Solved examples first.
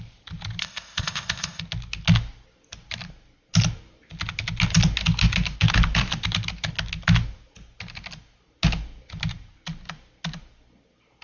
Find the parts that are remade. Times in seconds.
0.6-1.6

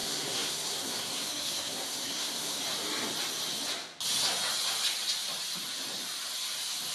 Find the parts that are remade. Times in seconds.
0.0-2.6

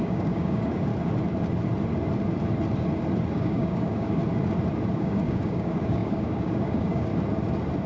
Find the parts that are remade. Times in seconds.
0.0-0.9; 3.3-4.2; 4.9-7.1

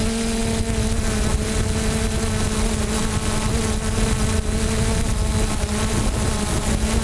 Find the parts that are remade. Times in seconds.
none

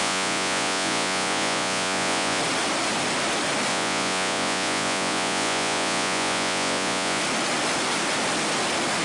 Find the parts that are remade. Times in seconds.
0.0-2.4; 3.7-7.2

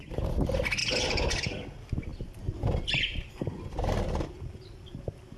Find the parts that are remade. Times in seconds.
none

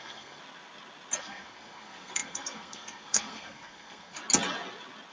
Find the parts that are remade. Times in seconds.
0.0-0.4; 1.2-4.2

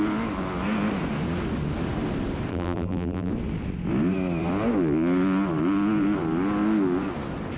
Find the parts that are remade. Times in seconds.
2.5-3.3